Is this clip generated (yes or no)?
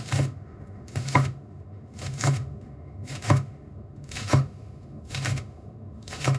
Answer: yes